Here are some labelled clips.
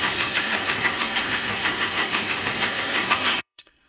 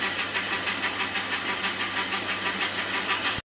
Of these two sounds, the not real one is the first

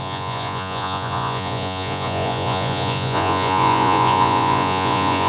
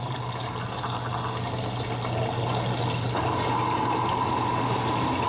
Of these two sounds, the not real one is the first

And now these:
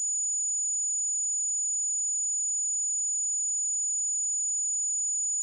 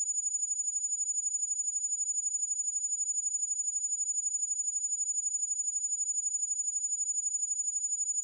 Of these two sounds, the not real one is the second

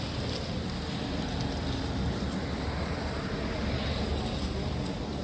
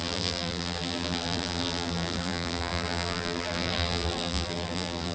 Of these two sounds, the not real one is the second